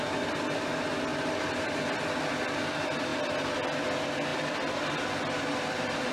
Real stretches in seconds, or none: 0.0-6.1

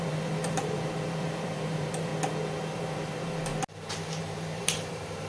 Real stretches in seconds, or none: 2.1-2.6; 3.5-4.2

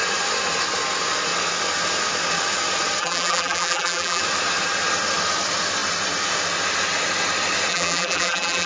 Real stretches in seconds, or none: 0.0-3.0; 4.2-7.7

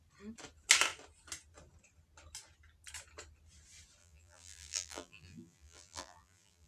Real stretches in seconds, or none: 0.0-4.0

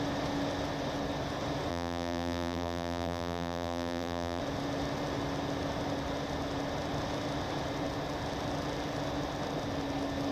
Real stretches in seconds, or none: 0.0-1.7; 4.4-10.3

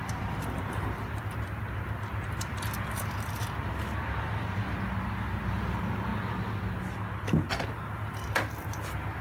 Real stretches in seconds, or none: 0.0-9.2